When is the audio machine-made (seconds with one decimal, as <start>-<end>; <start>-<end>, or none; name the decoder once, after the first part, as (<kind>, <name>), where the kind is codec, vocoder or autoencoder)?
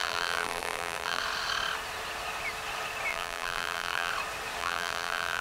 0.0-1.2 (vocoder, BigVGAN v2); 3.1-4.1; 4.6-5.4